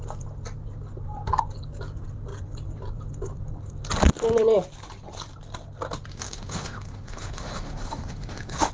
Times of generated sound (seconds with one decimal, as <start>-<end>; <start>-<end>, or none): 6.1-8.7